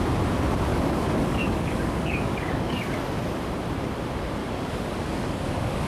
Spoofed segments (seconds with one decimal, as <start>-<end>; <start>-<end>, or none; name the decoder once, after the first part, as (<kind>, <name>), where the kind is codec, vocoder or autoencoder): 0.7-2.8 (codec, DAC); 4.4-5.9